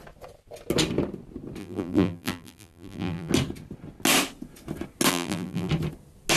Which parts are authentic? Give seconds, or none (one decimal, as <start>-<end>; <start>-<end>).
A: 0.0-1.6; 3.3-5.1; 5.7-6.4